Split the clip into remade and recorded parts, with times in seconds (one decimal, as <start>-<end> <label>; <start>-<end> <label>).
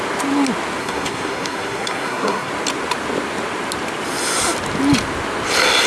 0.0-0.8 recorded; 0.8-2.5 remade; 2.5-5.9 recorded